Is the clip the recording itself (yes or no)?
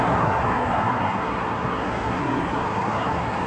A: no